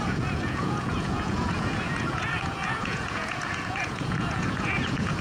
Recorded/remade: remade